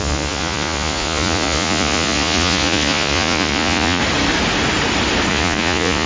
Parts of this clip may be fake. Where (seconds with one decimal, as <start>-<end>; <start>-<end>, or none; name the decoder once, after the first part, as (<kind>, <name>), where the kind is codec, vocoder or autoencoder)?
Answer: 0.0-4.0 (vocoder, Vocos); 5.3-6.1

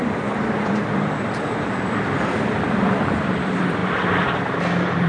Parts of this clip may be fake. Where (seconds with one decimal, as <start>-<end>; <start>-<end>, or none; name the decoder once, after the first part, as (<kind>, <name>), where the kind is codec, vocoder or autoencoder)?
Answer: 0.0-5.1 (vocoder, BigVGAN v2)

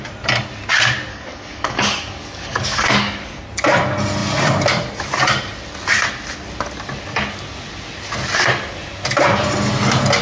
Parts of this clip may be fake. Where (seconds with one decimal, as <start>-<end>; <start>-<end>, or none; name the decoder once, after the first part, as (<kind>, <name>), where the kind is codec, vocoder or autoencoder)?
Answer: 1.1-3.4 (codec, DAC)

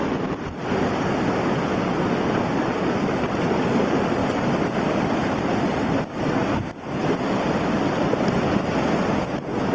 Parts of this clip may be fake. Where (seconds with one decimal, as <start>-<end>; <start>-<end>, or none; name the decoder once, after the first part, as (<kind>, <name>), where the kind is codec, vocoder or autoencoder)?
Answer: none

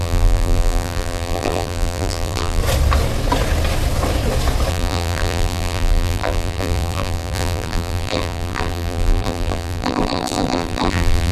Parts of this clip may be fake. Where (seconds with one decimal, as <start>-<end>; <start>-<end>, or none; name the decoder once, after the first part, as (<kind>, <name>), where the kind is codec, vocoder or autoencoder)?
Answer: 0.0-2.6 (vocoder, BigVGAN v2); 4.7-11.3